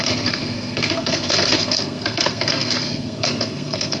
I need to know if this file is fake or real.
fake